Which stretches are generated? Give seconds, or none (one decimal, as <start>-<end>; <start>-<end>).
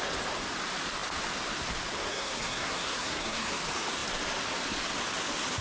2.1-3.5